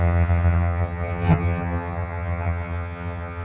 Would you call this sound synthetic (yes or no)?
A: yes